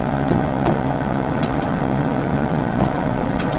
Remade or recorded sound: remade